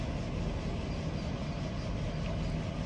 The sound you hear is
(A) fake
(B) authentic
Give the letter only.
B